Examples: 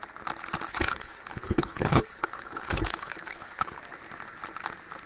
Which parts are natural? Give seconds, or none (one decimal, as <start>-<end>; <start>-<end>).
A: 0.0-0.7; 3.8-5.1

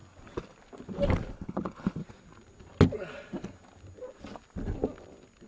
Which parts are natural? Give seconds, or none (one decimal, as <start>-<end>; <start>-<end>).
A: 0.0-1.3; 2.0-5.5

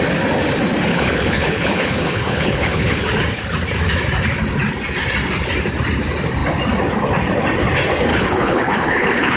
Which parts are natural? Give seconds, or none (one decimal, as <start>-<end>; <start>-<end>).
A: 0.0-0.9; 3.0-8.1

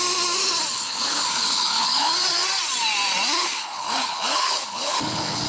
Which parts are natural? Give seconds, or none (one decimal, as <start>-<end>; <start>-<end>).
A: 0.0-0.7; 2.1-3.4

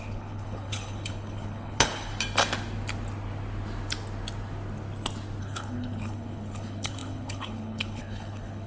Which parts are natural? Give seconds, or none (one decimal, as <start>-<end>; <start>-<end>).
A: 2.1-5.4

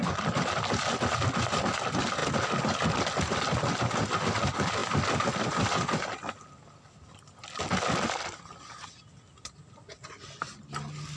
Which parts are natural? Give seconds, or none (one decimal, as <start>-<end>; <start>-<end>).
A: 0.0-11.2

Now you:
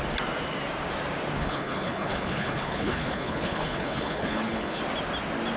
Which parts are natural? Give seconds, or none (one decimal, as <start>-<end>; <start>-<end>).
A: 0.0-1.4; 4.8-5.6

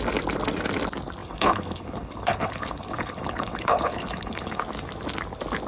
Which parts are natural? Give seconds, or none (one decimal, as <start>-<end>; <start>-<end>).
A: 0.0-1.2; 4.6-5.7